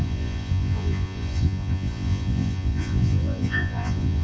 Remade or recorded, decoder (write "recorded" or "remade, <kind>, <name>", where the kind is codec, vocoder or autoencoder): remade, vocoder, Vocos